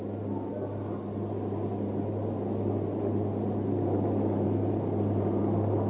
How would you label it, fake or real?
real